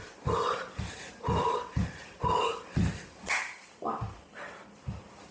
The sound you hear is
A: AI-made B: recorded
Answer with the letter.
B